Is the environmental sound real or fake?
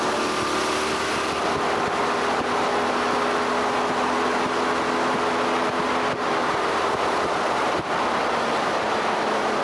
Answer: real